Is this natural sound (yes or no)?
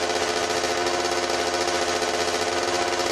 yes